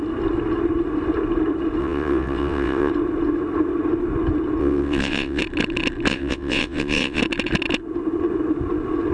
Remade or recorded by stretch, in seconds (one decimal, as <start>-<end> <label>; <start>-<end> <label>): 0.0-1.8 recorded; 1.8-2.9 remade; 2.9-4.6 recorded; 4.6-5.4 remade; 5.4-6.1 recorded; 6.1-7.2 remade; 7.2-9.1 recorded